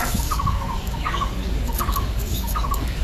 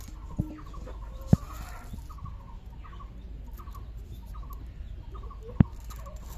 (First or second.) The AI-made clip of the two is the first